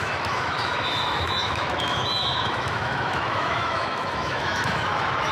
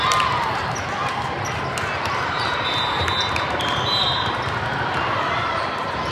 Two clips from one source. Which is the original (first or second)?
second